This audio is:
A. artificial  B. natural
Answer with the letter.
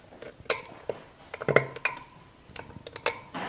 B